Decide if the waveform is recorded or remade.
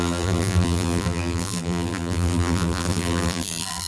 remade